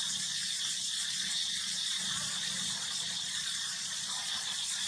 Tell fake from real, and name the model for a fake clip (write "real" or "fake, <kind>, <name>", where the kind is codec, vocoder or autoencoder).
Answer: fake, vocoder, Vocos